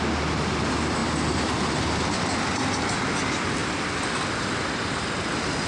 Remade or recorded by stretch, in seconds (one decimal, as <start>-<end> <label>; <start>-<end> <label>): 0.0-5.7 recorded